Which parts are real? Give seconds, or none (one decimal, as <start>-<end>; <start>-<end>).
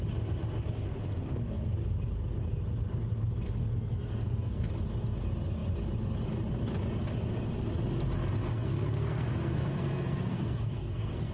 0.0-3.6; 4.7-8.5